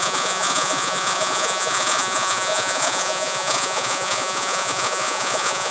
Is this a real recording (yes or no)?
no